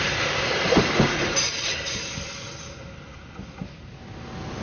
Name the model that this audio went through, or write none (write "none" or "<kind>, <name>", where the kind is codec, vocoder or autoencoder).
none